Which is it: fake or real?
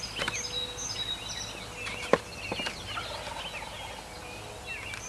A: real